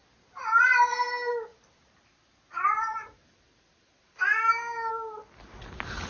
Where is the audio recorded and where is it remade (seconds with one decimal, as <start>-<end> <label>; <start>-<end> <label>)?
0.0-6.1 recorded